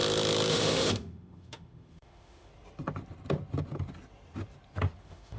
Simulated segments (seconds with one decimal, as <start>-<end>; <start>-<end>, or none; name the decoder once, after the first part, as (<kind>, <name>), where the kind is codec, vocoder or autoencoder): 0.5-2.5 (autoencoder, DAC-VAE); 5.0-5.4